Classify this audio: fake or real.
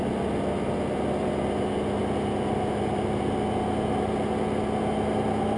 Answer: real